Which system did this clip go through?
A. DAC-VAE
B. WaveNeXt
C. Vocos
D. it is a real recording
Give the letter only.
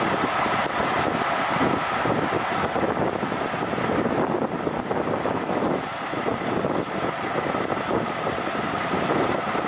D